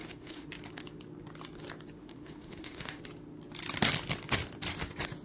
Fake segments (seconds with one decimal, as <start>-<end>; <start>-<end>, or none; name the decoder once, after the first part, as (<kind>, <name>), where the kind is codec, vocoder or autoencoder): 0.0-0.5 (autoencoder, DAC-VAE); 2.0-3.0